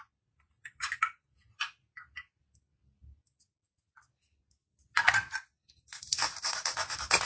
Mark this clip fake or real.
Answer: real